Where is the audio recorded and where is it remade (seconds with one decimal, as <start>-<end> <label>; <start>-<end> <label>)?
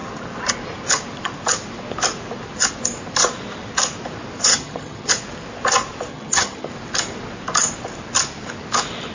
0.0-4.5 recorded; 4.5-5.1 remade; 5.1-6.1 recorded; 6.1-6.7 remade; 6.7-9.1 recorded